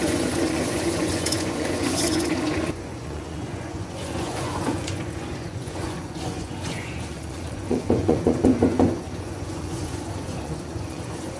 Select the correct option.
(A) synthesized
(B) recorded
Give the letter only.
A